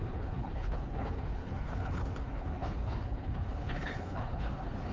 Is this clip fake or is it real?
fake